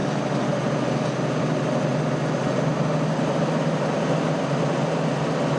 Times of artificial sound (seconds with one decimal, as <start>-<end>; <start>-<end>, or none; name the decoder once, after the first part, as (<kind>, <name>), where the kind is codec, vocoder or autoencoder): none